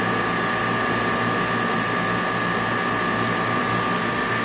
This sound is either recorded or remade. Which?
recorded